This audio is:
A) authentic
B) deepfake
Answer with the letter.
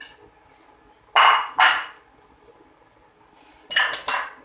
A